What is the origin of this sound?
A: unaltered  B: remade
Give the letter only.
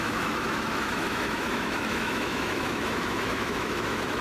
B